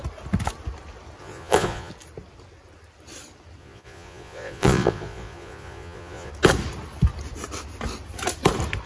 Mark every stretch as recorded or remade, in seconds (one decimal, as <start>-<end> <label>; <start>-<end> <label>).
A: 0.0-1.2 recorded; 1.2-1.9 remade; 1.9-3.6 recorded; 3.6-6.3 remade; 6.3-8.9 recorded